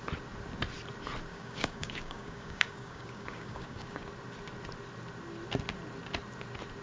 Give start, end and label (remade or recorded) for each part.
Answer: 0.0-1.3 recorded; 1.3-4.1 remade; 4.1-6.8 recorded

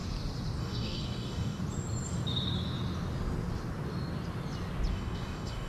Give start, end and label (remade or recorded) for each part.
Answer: 0.0-0.6 recorded; 0.6-1.6 remade; 1.6-4.9 recorded; 4.9-5.7 remade

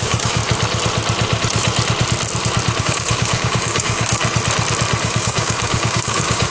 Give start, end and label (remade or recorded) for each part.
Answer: 0.0-0.4 remade; 0.4-2.8 recorded; 2.8-4.2 remade; 4.2-5.0 recorded; 5.0-6.5 remade

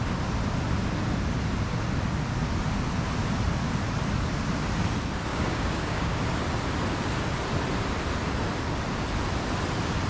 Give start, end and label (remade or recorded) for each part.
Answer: 0.0-5.3 recorded; 5.3-6.2 remade; 6.2-10.1 recorded

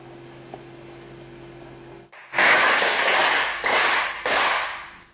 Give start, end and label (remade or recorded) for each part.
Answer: 0.0-2.4 recorded; 2.4-4.4 remade; 4.4-5.1 recorded

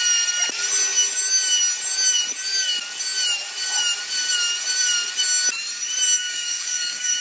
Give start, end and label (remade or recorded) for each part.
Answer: 0.0-6.2 recorded; 6.2-7.2 remade